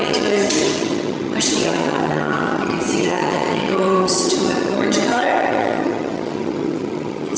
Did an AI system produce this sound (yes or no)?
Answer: yes